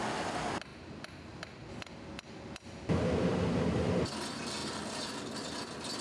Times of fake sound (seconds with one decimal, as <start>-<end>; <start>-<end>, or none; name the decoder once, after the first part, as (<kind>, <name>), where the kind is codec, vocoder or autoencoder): 4.6-5.3 (vocoder, BigVGAN v2)